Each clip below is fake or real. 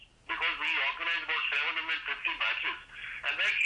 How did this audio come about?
real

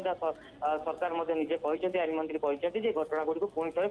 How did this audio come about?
real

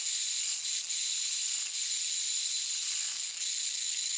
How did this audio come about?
real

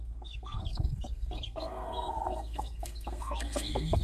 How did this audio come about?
fake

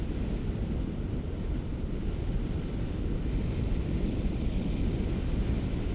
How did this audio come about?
real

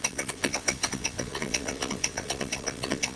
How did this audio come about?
fake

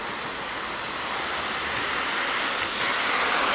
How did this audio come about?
real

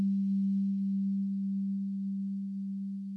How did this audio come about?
real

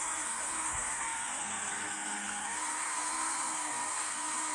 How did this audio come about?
fake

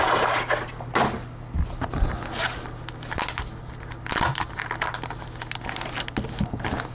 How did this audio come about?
real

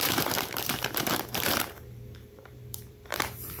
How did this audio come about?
fake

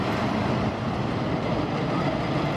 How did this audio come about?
real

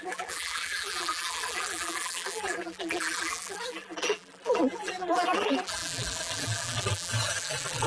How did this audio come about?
fake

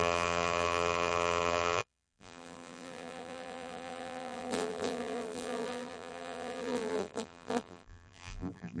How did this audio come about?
fake